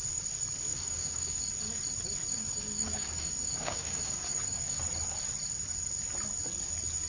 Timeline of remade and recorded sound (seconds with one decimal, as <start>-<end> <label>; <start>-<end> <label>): 0.0-0.7 recorded; 0.7-1.5 remade; 1.5-2.3 recorded; 2.3-4.8 remade; 4.8-7.1 recorded